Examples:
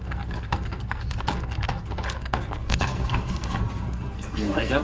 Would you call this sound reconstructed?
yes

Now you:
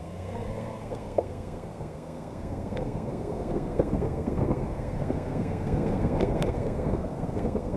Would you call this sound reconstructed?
yes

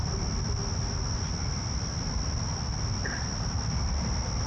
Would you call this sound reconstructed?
no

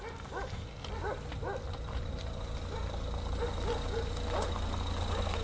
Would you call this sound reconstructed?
no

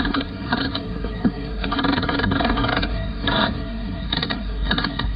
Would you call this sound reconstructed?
yes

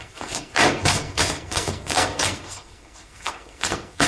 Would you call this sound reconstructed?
yes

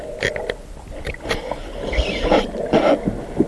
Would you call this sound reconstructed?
no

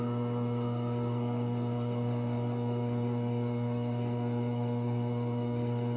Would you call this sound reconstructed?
yes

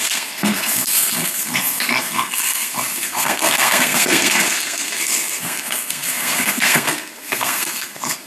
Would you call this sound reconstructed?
yes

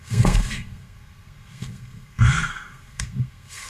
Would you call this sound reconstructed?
yes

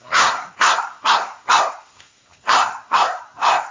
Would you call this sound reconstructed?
yes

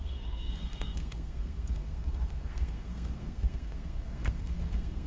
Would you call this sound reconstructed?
yes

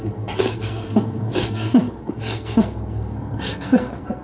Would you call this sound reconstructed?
yes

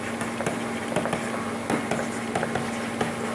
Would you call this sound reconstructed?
no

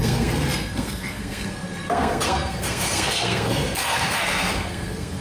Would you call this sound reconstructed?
yes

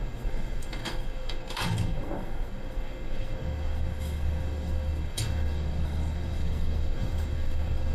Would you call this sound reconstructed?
yes